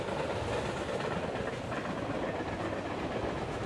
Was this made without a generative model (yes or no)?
yes